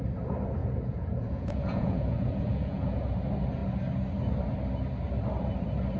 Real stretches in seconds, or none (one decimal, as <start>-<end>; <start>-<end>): 0.0-0.6; 3.0-6.0